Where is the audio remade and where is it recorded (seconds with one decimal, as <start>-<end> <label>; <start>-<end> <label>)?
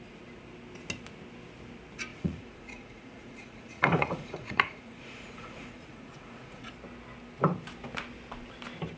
0.0-2.1 recorded; 2.1-6.7 remade; 6.7-9.0 recorded